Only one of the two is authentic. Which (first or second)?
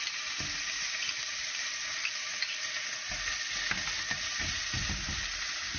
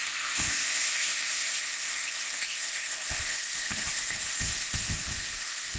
first